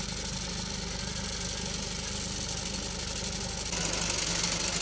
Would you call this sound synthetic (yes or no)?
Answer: no